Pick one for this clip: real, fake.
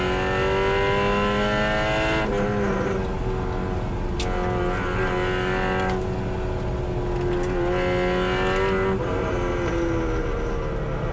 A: real